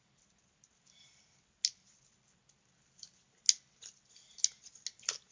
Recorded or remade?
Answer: recorded